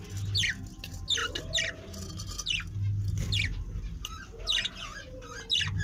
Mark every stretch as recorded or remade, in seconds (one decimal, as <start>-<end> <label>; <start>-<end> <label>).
0.0-5.8 recorded